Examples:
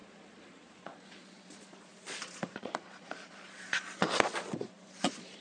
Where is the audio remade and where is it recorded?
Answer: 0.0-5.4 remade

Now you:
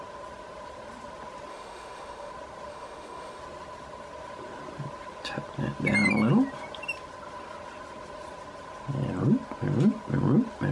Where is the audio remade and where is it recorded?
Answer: 0.0-1.5 recorded; 1.5-2.3 remade; 2.3-2.7 recorded; 2.7-3.4 remade; 3.4-10.7 recorded

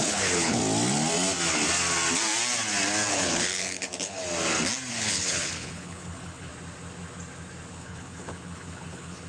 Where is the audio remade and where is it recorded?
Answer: 0.0-0.6 remade; 0.6-3.1 recorded; 3.1-4.2 remade; 4.2-4.9 recorded; 4.9-6.5 remade; 6.5-7.7 recorded; 7.7-9.3 remade

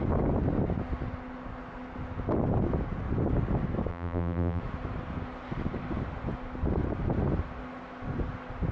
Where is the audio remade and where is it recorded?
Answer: 0.0-3.9 recorded; 3.9-4.6 remade; 4.6-8.7 recorded

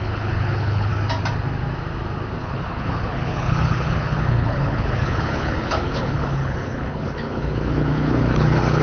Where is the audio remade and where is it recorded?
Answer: 0.0-0.9 remade; 0.9-2.4 recorded; 2.4-8.8 remade

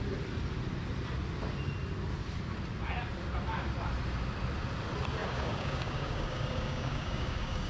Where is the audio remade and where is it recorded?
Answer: 0.0-5.2 recorded; 5.2-7.7 remade

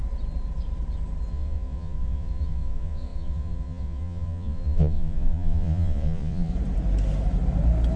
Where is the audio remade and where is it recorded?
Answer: 0.0-1.3 recorded; 1.3-6.5 remade; 6.5-8.0 recorded

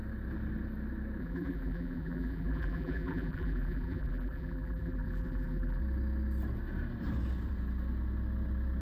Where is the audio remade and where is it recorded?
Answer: 0.0-1.2 recorded; 1.2-5.8 remade; 5.8-8.8 recorded